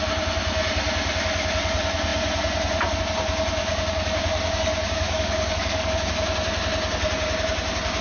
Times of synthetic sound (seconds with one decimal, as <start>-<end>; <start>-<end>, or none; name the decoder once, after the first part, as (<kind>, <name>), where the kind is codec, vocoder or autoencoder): 3.6-6.1 (codec, DAC)